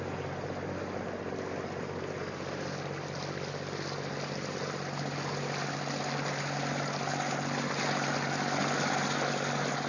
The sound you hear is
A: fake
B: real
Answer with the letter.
B